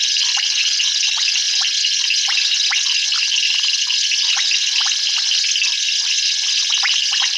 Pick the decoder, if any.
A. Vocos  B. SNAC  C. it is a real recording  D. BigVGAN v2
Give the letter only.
D